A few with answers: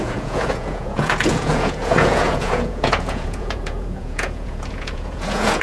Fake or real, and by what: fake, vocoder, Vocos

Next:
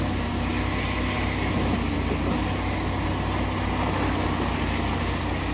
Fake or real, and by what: real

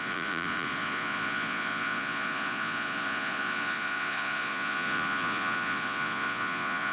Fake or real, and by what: fake, vocoder, Vocos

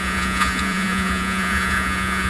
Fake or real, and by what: fake, vocoder, Vocos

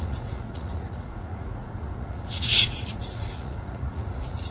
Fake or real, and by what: fake, vocoder, Vocos